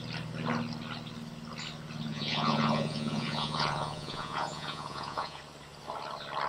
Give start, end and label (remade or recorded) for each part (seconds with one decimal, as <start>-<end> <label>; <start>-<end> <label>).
0.0-2.1 recorded; 2.1-5.4 remade; 5.4-6.5 recorded